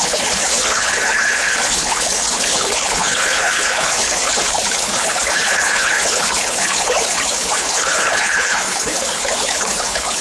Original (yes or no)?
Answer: no